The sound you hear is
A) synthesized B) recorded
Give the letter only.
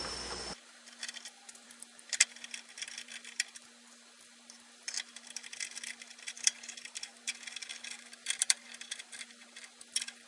A